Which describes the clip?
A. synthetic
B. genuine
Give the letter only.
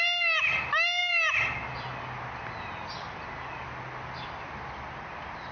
B